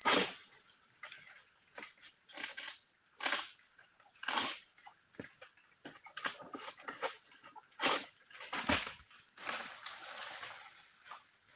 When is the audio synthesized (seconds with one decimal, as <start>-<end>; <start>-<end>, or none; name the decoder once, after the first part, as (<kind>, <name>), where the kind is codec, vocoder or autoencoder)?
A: 0.0-2.1 (vocoder, BigVGAN v2); 2.5-5.0